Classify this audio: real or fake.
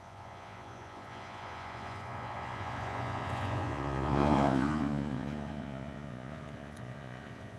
fake